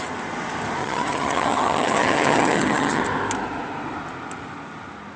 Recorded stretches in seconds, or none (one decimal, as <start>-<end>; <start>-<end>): 0.0-0.8; 3.0-5.2